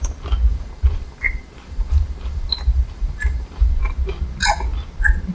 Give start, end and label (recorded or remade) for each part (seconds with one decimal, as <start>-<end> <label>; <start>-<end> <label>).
0.0-0.5 recorded; 0.5-3.7 remade; 3.7-5.3 recorded